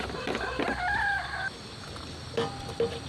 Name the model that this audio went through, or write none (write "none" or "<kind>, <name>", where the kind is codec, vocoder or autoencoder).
none